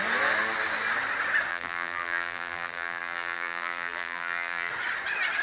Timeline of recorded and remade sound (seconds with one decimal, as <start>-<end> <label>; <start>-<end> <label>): 0.0-1.5 recorded; 1.5-4.7 remade; 4.7-5.4 recorded

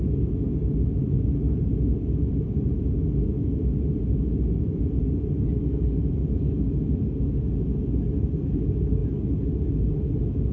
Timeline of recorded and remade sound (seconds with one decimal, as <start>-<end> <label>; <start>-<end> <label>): 0.0-10.5 recorded

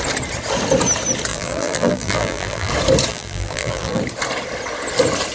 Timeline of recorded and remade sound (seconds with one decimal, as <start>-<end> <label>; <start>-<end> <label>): 0.0-1.3 recorded; 1.3-2.7 remade; 2.7-3.1 recorded; 3.1-4.0 remade; 4.0-5.3 recorded

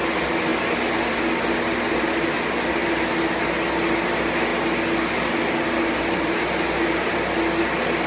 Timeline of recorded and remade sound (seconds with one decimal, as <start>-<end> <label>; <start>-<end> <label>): 0.0-8.1 recorded